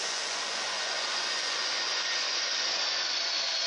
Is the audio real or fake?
fake